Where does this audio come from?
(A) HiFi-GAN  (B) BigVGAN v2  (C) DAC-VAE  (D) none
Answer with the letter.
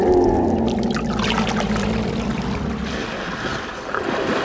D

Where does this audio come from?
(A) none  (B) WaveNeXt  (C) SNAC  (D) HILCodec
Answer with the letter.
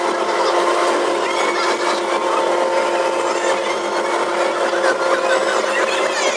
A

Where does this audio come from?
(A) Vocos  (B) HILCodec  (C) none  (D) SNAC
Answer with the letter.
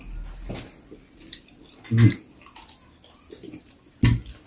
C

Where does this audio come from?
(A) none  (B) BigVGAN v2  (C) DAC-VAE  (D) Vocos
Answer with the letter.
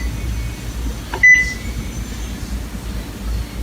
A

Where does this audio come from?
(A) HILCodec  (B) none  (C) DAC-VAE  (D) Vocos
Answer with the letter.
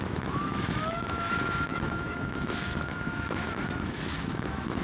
C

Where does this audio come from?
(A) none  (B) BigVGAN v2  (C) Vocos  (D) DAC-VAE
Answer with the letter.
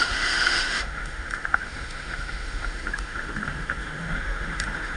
D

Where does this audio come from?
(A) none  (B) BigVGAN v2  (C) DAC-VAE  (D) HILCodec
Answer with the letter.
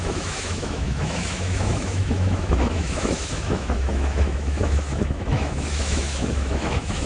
C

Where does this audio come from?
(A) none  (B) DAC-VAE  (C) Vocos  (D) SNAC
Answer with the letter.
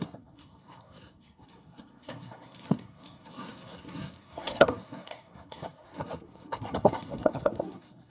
D